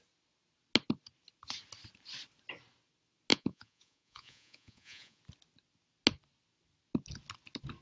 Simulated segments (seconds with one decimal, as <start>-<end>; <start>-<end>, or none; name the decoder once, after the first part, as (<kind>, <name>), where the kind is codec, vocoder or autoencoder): 3.3-5.2 (vocoder, Vocos)